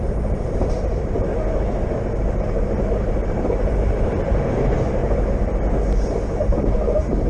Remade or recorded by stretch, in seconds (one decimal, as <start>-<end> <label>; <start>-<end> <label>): 0.0-1.3 remade; 1.3-2.4 recorded; 2.4-5.0 remade; 5.0-7.3 recorded